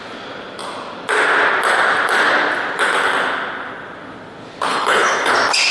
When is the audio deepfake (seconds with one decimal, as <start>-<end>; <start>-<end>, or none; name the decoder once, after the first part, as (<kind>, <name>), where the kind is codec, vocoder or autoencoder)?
4.7-5.3 (codec, HILCodec)